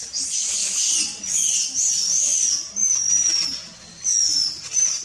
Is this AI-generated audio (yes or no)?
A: no